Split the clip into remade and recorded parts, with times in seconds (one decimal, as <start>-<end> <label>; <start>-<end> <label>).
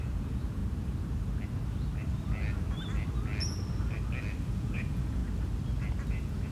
0.0-0.6 remade; 0.6-4.5 recorded; 4.5-5.2 remade; 5.2-6.1 recorded; 6.1-6.5 remade